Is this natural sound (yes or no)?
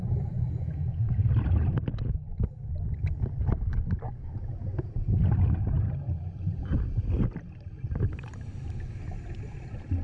yes